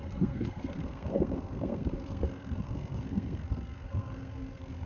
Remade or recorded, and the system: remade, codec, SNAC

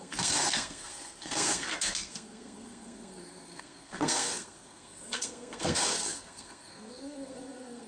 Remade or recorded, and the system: remade, codec, SNAC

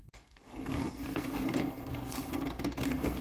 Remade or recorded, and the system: remade, codec, SNAC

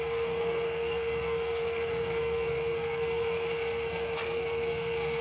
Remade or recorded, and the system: remade, codec, SNAC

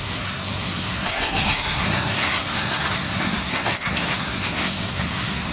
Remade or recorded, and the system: remade, codec, SNAC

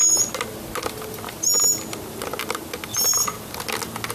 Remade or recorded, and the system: recorded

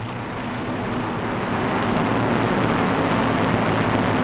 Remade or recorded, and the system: recorded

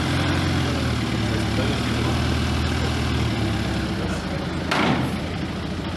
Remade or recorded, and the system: recorded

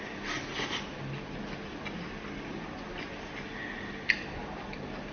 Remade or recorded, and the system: recorded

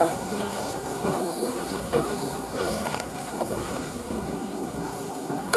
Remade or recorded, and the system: remade, codec, SNAC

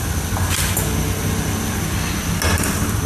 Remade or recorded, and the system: recorded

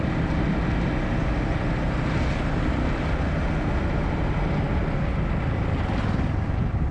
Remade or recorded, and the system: recorded